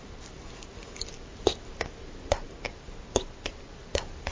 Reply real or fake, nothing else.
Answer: real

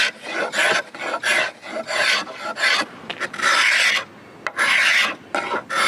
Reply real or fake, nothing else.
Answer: real